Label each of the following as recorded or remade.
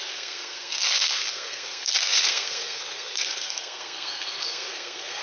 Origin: remade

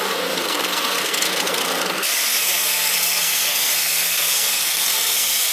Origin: remade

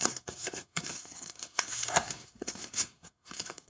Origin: remade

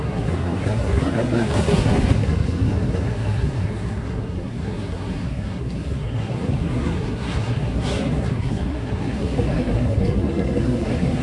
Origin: remade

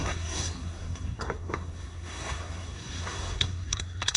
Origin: remade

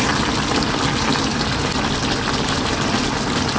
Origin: recorded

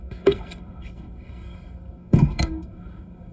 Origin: remade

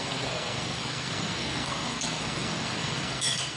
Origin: remade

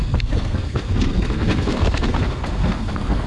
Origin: remade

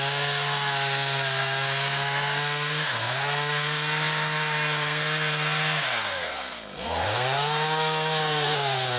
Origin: remade